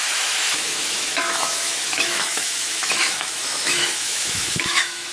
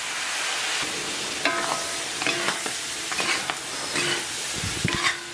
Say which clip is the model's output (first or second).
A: first